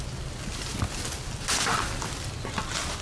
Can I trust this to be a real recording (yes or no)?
yes